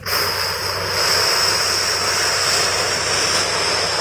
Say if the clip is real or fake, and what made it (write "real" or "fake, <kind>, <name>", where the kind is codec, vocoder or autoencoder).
real